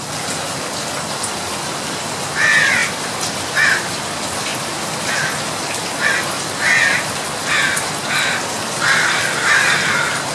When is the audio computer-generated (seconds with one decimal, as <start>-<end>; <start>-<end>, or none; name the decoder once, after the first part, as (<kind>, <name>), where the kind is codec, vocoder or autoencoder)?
none